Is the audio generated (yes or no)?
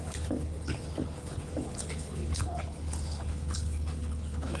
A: yes